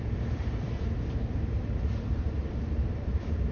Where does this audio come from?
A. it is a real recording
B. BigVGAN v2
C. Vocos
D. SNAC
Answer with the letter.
B